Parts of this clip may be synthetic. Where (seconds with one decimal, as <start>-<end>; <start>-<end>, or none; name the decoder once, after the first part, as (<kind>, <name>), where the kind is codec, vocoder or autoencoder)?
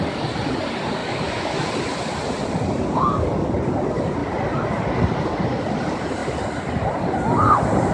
1.0-1.7 (autoencoder, DAC-VAE)